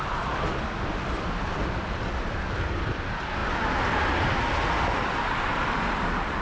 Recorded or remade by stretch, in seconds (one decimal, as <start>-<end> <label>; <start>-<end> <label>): 0.0-3.4 remade; 3.4-4.1 recorded; 4.1-6.4 remade